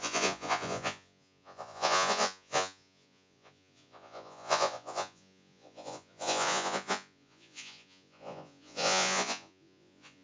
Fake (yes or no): yes